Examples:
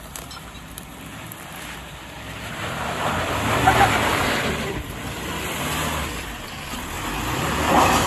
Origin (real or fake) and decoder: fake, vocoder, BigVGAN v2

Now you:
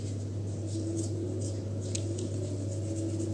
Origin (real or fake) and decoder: real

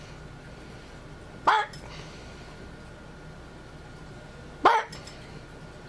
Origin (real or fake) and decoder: real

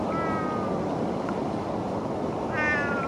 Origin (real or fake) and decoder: real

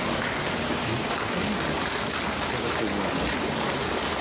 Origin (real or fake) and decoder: real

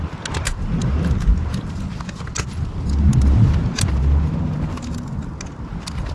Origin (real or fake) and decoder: real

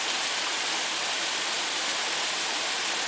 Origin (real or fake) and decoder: fake, vocoder, BigVGAN v2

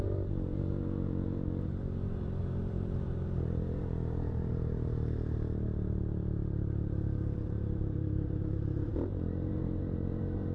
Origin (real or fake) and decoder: fake, vocoder, BigVGAN v2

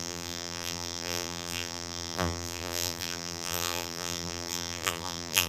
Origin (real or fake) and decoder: fake, vocoder, BigVGAN v2